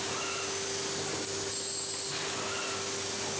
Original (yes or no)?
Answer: yes